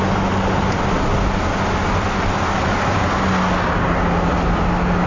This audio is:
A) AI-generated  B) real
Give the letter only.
B